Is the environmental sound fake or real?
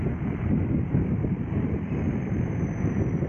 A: fake